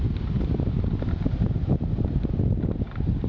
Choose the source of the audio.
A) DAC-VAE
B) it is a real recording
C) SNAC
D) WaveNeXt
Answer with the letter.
B